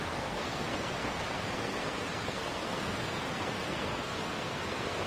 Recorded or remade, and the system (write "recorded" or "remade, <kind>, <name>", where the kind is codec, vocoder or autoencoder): remade, codec, SNAC